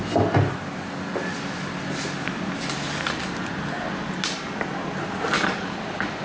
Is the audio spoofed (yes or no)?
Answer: no